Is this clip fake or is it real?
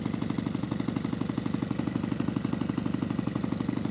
real